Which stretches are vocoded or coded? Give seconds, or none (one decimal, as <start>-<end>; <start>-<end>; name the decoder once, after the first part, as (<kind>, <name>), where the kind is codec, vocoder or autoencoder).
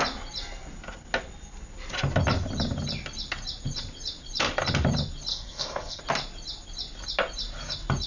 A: 5.3-6.0 (codec, SNAC)